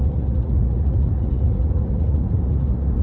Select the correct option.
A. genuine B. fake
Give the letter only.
B